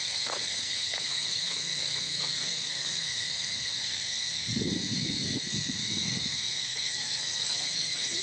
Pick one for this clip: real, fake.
fake